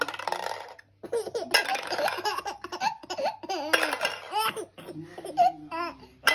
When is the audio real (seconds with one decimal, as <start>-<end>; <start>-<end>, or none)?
0.0-1.7; 2.4-6.3